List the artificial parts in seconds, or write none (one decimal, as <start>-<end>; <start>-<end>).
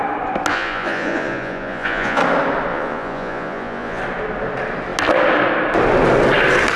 0.5-2.2; 2.7-4.0